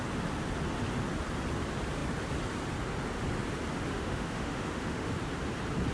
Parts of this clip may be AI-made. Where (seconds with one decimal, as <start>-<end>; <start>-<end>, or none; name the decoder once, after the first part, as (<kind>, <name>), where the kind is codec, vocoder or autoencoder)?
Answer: 3.9-5.1 (autoencoder, DAC-VAE)